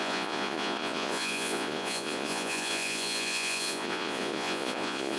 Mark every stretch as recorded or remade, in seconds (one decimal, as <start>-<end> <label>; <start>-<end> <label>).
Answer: 0.0-5.2 remade